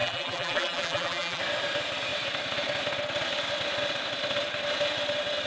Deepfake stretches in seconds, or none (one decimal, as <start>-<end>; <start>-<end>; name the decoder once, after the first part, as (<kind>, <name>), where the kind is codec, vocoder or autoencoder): 0.0-1.4 (vocoder, BigVGAN v2)